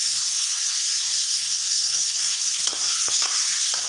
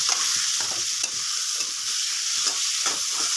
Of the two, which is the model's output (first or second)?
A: first